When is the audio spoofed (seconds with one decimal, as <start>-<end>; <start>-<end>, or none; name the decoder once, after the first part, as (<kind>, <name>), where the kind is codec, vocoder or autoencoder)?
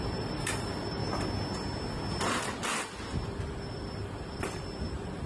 0.0-1.0 (vocoder, BigVGAN v2); 3.4-5.3